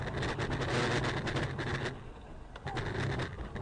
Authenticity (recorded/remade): recorded